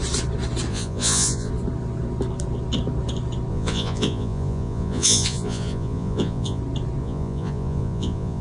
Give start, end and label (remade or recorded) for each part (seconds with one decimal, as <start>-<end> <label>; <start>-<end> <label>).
0.0-0.7 recorded; 0.7-1.5 remade; 1.5-3.5 recorded; 3.5-6.6 remade; 6.6-7.0 recorded; 7.0-8.4 remade